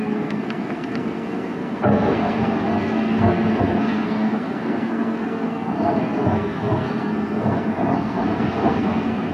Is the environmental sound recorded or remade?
remade